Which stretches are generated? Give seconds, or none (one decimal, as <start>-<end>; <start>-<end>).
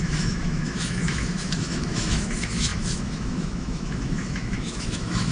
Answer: 0.0-5.3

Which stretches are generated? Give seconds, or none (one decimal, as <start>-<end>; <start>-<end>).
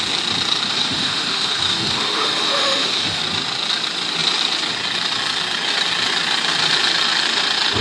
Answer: 0.7-3.2